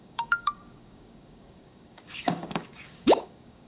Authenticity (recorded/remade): remade